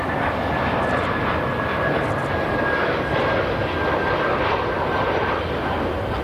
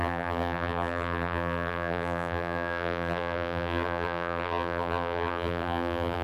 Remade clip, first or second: second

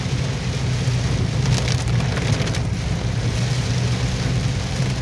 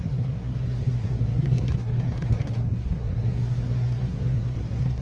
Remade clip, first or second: second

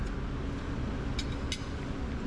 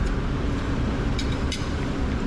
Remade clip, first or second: second